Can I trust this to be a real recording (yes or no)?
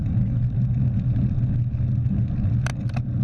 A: yes